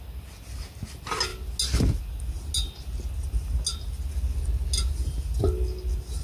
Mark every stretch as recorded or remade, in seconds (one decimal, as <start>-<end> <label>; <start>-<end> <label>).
0.0-6.2 recorded